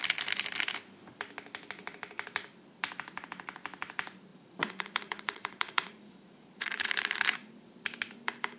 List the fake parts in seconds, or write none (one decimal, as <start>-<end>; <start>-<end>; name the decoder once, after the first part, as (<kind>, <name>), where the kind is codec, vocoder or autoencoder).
4.3-7.7 (vocoder, Vocos)